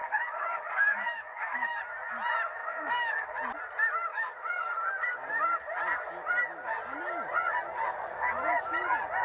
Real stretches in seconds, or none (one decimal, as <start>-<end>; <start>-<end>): 1.8-2.6; 3.3-4.1; 4.7-9.2